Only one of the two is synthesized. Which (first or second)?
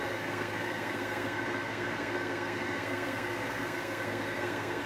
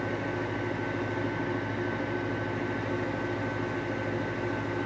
first